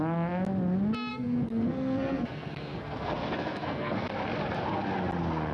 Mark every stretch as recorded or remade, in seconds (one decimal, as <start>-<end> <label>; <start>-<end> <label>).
0.0-1.1 recorded; 1.1-4.1 remade; 4.1-5.5 recorded